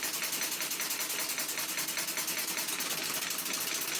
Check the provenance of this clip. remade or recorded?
recorded